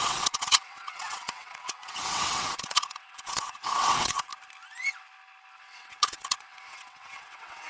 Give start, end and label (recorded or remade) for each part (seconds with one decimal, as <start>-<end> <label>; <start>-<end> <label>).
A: 0.0-4.3 remade; 4.3-5.6 recorded; 5.6-7.7 remade